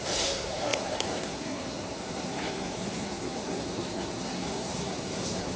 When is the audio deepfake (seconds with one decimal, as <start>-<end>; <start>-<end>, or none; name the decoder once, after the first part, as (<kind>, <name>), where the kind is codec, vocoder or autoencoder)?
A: 0.0-5.6 (codec, SNAC)